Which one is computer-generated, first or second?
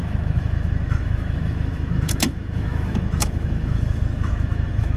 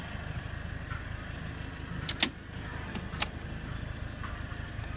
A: first